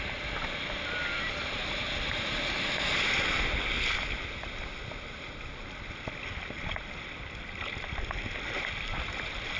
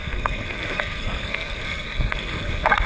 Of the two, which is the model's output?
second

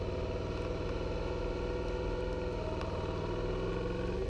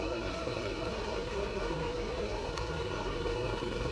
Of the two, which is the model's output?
second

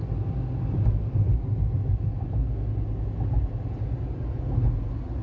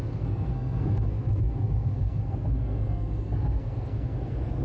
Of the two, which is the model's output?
second